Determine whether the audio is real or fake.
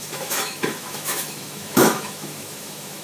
fake